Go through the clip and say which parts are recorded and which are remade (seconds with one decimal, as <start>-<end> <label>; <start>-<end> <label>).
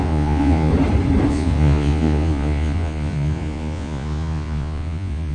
0.0-0.7 remade; 0.7-1.3 recorded; 1.3-5.3 remade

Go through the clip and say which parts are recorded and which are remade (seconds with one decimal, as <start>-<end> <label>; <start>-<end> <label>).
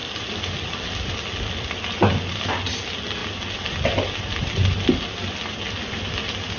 0.0-6.6 recorded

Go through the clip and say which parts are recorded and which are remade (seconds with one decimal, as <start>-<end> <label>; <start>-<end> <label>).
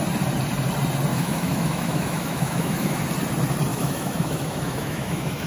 0.0-1.1 recorded; 1.1-3.0 remade; 3.0-3.7 recorded; 3.7-5.5 remade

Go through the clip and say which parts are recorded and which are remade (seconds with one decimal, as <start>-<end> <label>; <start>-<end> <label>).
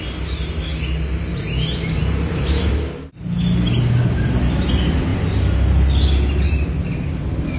0.0-7.6 recorded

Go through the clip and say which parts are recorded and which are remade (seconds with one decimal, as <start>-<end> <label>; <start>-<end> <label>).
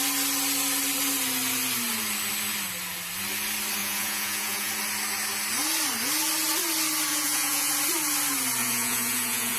0.0-3.8 recorded; 3.8-4.7 remade; 4.7-7.1 recorded; 7.1-7.7 remade; 7.7-8.6 recorded; 8.6-9.6 remade